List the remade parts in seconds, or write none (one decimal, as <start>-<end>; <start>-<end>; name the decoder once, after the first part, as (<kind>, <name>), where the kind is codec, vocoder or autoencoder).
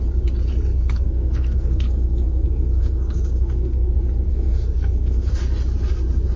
0.7-3.9 (codec, SNAC); 4.3-5.3